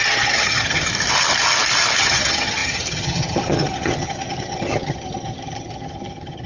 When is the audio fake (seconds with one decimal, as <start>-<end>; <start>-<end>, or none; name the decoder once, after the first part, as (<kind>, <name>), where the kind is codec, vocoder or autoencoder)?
0.0-0.9 (vocoder, HiFi-GAN); 2.0-6.5